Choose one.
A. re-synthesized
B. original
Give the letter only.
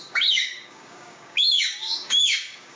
A